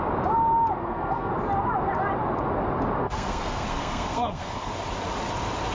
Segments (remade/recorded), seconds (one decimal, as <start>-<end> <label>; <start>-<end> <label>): 0.0-0.8 recorded; 0.8-1.3 remade; 1.3-3.0 recorded; 3.0-4.7 remade; 4.7-5.7 recorded